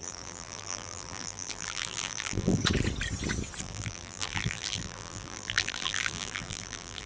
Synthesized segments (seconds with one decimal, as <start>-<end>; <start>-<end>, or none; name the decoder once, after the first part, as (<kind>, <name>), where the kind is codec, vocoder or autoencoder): 0.0-2.6 (vocoder, BigVGAN v2); 3.6-7.1